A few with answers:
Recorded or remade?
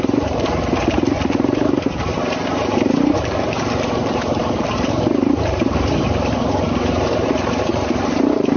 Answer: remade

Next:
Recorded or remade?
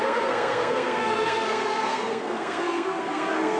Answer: remade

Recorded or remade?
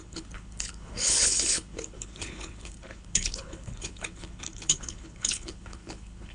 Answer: remade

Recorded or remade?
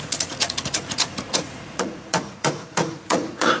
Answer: remade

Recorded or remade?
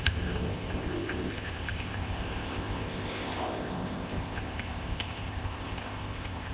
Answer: remade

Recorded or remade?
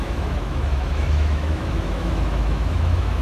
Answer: remade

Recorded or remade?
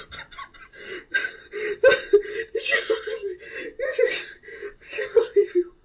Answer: recorded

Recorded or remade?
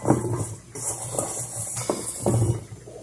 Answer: recorded